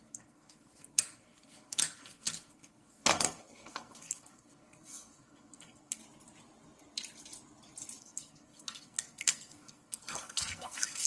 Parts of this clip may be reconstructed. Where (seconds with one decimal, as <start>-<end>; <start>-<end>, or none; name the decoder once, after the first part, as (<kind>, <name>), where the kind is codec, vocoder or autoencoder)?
0.0-6.0 (codec, SNAC); 8.0-11.1

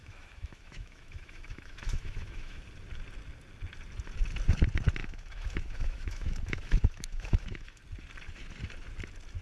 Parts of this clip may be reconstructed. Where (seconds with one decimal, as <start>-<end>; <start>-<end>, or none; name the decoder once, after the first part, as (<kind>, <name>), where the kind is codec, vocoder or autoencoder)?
0.0-2.6 (autoencoder, DAC-VAE); 5.0-7.8

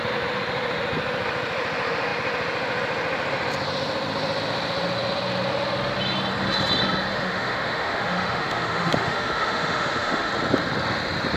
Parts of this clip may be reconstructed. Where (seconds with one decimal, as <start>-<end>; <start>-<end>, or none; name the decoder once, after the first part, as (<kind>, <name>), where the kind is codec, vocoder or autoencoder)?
7.1-10.3 (autoencoder, DAC-VAE)

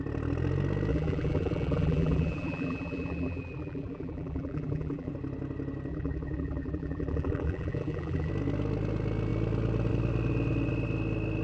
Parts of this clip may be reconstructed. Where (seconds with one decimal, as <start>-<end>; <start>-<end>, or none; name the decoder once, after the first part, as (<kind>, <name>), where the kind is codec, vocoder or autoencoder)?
0.9-5.1 (vocoder, BigVGAN v2); 5.9-8.3

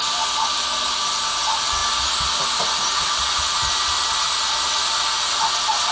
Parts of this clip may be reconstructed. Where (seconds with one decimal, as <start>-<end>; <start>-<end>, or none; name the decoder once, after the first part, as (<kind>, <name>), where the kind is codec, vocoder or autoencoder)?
none

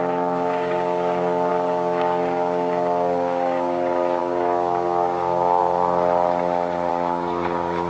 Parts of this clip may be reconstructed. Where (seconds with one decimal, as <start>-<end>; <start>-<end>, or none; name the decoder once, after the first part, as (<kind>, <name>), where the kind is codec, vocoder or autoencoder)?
0.0-5.6 (codec, DAC); 6.9-7.9

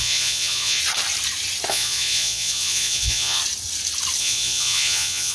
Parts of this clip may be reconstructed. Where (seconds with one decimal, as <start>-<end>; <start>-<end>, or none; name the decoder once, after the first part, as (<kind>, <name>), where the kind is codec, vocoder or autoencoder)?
0.0-0.8 (vocoder, Vocos); 1.7-3.4; 4.2-5.3